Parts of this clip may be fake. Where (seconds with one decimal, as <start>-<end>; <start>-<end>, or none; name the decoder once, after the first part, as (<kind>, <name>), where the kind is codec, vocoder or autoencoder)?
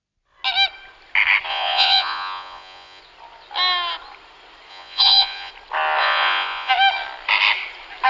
1.5-3.0 (vocoder, Vocos); 4.7-5.5; 6.0-6.7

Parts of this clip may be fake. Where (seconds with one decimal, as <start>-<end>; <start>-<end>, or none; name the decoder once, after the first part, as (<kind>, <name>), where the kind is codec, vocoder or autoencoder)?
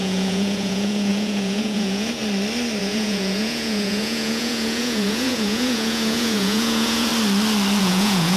0.0-2.2 (vocoder, Vocos); 2.8-7.1; 7.8-8.4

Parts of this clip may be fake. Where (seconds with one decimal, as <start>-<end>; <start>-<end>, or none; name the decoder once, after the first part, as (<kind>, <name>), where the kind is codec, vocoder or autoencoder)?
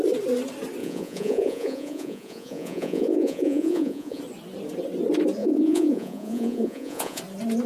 0.8-4.2 (vocoder, Vocos); 5.4-7.2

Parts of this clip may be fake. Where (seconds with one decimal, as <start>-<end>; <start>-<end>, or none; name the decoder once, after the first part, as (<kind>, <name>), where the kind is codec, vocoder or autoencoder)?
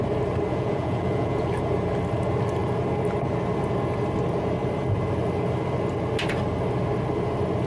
0.5-1.5 (vocoder, Vocos)